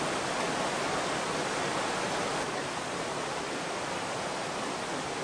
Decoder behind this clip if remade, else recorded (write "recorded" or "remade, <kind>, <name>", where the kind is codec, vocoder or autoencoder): recorded